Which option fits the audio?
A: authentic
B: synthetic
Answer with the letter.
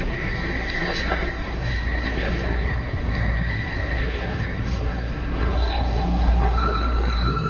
B